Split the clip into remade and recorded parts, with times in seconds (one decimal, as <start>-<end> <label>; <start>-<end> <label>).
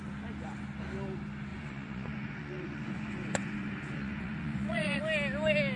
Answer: 0.0-1.5 recorded; 1.5-5.0 remade; 5.0-5.8 recorded